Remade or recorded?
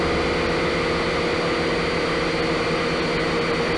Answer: recorded